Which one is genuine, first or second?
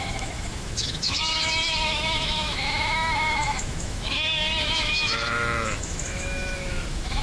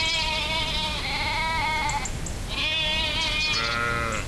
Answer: second